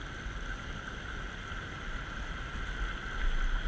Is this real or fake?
real